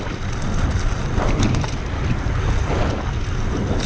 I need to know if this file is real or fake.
real